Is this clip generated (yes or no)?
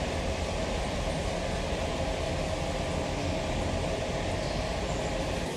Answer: no